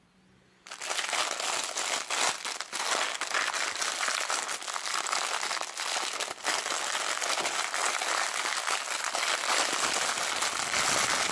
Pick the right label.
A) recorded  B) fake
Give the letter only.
A